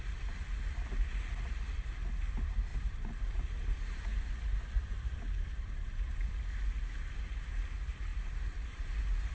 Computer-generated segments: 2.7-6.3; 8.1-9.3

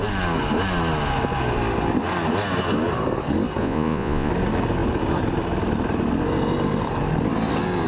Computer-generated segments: 3.6-4.3

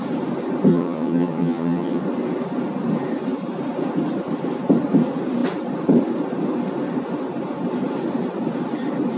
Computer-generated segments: 0.7-2.0